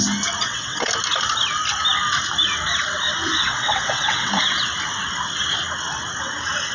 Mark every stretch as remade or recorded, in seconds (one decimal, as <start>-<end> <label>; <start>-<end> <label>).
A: 0.0-0.4 recorded; 0.4-0.9 remade; 0.9-3.4 recorded; 3.4-4.3 remade; 4.3-6.7 recorded

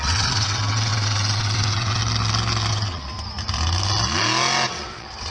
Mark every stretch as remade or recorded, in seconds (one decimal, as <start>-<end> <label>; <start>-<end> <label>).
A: 0.0-2.0 remade; 2.0-2.7 recorded; 2.7-3.1 remade; 3.1-4.7 recorded; 4.7-5.3 remade

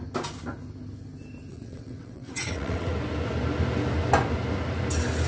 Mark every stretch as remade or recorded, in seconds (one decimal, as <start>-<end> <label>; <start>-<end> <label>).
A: 0.0-1.5 recorded; 1.5-2.9 remade; 2.9-5.3 recorded

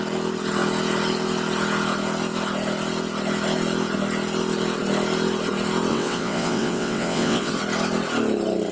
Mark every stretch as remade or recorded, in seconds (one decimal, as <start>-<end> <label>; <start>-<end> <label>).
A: 0.0-5.9 recorded; 5.9-7.5 remade; 7.5-8.7 recorded

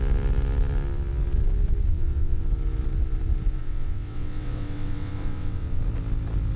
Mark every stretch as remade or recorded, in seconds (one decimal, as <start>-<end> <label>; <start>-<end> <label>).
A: 0.0-1.9 recorded; 1.9-2.4 remade; 2.4-3.6 recorded; 3.6-5.8 remade; 5.8-6.6 recorded

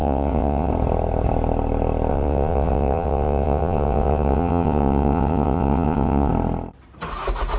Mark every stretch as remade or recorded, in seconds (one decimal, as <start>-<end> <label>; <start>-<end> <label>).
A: 0.0-0.7 remade; 0.7-2.1 recorded; 2.1-6.3 remade; 6.3-7.6 recorded